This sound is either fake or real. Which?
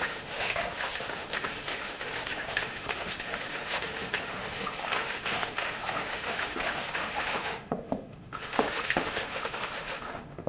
fake